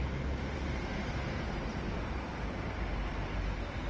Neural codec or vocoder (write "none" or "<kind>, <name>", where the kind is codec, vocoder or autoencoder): none